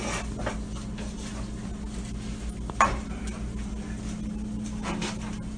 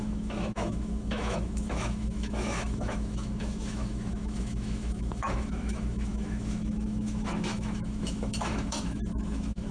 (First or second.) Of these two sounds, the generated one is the second